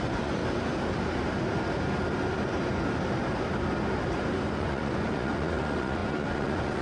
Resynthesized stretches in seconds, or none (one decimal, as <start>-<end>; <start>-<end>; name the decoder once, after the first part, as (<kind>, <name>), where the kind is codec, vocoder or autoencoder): 0.0-0.4 (vocoder, Vocos); 4.5-6.8